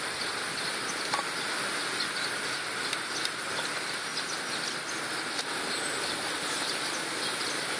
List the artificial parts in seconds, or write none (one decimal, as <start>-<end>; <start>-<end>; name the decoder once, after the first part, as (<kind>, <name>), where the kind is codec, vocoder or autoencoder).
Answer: none